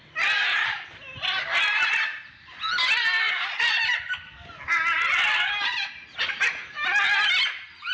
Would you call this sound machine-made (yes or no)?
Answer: no